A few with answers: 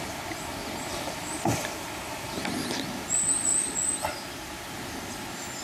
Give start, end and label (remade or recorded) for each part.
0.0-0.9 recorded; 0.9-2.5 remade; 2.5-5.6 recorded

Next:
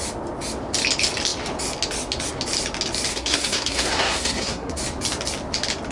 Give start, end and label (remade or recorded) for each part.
0.0-3.1 recorded; 3.1-4.8 remade; 4.8-5.9 recorded